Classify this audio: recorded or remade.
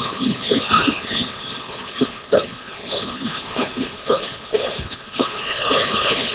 remade